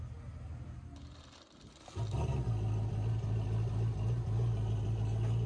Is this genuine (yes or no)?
yes